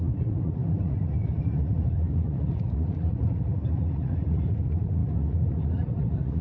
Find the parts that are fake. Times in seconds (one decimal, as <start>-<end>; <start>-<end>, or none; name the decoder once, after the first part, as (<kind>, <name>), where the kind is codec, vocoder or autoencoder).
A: 0.0-6.4 (vocoder, Vocos)

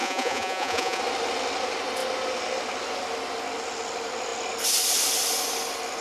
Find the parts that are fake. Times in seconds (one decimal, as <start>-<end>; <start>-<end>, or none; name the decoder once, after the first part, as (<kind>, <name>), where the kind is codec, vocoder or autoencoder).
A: 0.0-1.0 (vocoder, Vocos)

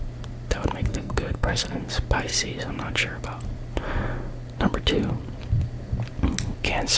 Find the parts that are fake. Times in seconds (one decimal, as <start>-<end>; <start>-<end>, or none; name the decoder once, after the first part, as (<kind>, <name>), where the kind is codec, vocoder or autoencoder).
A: 0.9-1.8 (codec, SNAC)

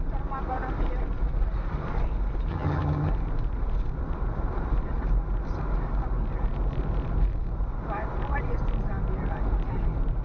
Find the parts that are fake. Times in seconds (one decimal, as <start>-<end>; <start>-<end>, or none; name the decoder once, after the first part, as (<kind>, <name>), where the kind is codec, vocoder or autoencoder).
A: 2.5-3.1 (vocoder, HiFi-GAN)

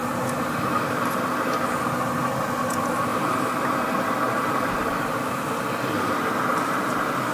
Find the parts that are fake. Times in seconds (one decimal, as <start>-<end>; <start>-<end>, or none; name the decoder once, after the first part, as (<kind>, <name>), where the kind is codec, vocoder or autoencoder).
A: 0.0-1.8 (vocoder, BigVGAN v2); 3.1-5.6

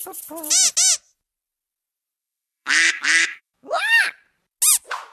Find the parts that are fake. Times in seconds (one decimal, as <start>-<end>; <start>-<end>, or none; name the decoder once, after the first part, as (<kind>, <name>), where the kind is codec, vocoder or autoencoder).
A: 2.2-4.0 (autoencoder, DAC-VAE)